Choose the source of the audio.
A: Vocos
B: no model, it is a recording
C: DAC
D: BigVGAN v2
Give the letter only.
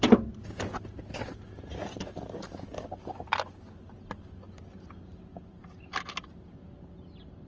B